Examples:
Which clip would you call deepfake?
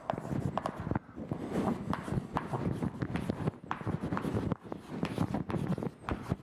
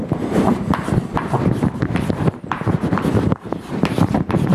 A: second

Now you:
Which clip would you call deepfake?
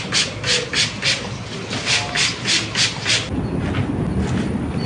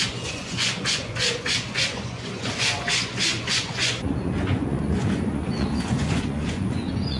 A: second